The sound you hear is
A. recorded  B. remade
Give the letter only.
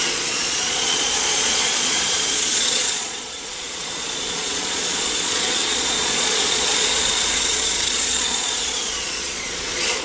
B